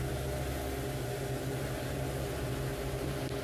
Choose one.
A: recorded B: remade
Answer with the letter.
A